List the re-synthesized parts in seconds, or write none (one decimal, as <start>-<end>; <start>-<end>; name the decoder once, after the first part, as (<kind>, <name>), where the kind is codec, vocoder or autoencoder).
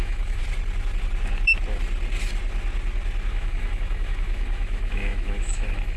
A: 0.0-0.4 (autoencoder, DAC-VAE); 3.3-6.0